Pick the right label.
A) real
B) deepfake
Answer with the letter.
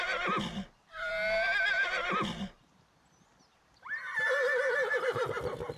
A